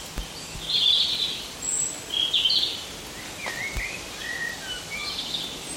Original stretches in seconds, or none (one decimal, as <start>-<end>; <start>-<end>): 0.0-3.4; 5.3-5.8